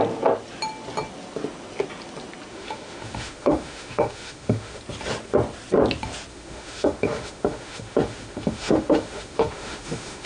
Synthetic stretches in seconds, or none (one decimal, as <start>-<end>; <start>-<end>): 2.5-4.8; 6.3-10.3